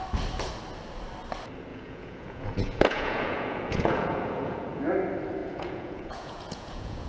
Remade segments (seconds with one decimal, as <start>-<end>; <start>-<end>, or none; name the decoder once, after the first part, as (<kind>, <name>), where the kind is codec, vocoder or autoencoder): 1.7-4.9 (vocoder, Vocos); 5.4-7.1